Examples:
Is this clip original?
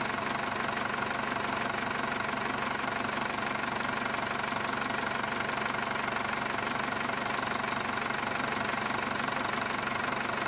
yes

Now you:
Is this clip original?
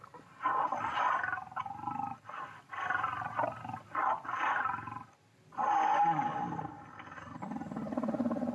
yes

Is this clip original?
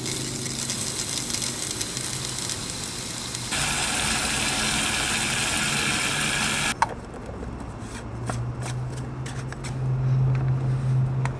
yes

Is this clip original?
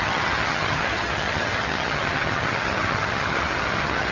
no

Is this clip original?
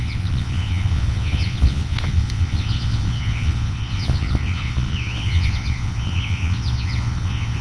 no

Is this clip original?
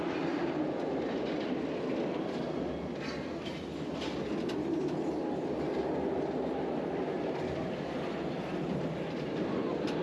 yes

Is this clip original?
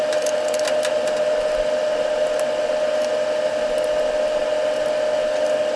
yes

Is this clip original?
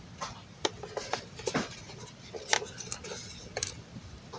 yes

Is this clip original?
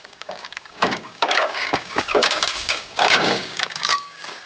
no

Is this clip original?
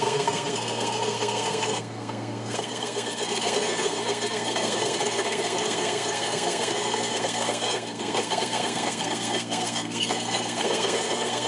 no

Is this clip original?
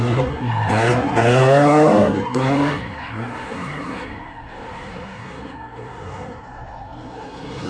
no